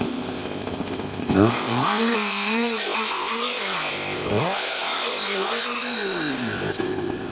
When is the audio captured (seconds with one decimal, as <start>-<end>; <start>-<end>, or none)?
none